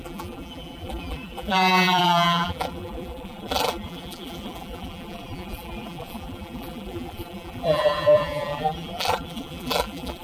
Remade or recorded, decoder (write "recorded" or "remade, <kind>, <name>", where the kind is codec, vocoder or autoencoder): remade, vocoder, BigVGAN v2